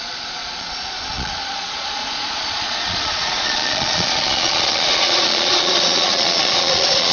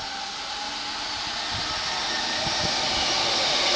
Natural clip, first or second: second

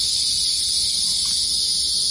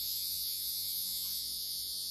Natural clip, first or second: first